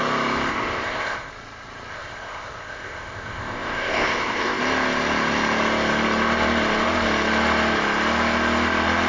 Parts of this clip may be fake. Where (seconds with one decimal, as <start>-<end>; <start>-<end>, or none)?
0.5-1.3; 1.9-4.6